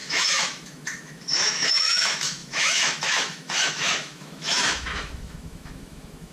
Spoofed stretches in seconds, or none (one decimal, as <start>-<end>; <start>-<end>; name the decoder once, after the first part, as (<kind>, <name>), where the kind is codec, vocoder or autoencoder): 0.0-6.3 (autoencoder, DAC-VAE)